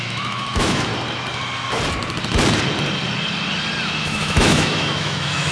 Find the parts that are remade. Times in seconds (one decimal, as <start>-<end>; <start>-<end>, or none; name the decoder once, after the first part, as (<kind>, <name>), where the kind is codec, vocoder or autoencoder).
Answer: 0.0-0.9 (autoencoder, DAC-VAE); 4.0-5.5